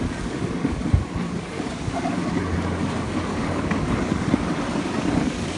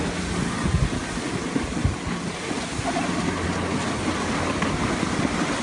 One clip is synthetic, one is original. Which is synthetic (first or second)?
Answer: first